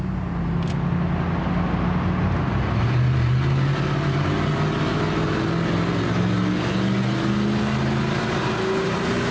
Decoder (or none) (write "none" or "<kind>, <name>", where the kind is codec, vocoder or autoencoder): none